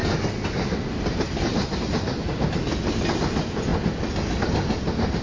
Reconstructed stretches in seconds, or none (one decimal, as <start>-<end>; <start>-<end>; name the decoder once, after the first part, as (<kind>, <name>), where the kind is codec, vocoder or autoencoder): none